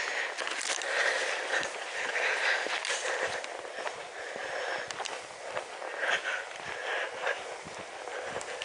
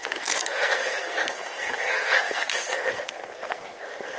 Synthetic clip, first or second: second